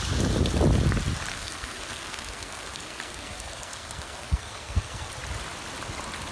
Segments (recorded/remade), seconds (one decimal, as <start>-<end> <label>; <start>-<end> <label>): 0.0-1.3 recorded; 1.3-5.1 remade; 5.1-6.3 recorded